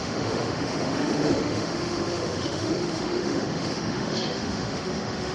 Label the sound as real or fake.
fake